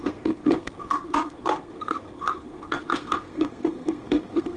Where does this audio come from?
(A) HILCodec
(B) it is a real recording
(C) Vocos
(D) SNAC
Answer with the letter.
D